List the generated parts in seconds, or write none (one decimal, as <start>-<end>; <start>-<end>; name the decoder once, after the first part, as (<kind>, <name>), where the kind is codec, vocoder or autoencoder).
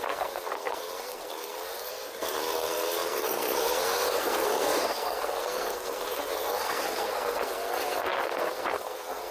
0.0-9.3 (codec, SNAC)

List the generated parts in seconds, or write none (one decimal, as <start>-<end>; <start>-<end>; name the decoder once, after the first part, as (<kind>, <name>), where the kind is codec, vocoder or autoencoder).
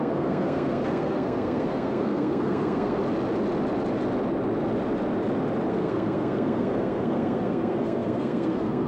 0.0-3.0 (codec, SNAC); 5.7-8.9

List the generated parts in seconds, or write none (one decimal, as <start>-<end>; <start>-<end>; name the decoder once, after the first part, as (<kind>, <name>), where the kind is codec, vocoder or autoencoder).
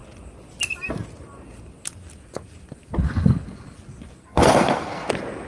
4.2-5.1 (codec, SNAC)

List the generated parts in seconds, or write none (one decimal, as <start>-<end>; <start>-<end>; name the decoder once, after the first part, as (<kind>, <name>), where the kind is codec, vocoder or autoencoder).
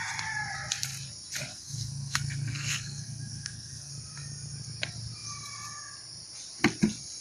1.5-3.9 (codec, SNAC)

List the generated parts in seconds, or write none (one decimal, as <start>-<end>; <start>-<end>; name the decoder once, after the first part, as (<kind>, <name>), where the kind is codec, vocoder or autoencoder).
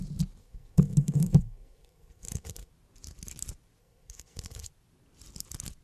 0.4-2.7 (codec, SNAC); 3.8-4.7